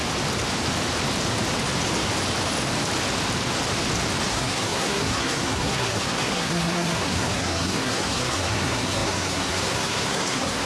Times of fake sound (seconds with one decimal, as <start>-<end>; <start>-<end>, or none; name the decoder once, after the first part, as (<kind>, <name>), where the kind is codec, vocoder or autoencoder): 4.3-10.7 (codec, SNAC)